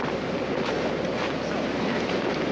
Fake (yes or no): no